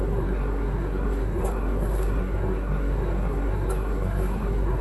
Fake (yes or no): yes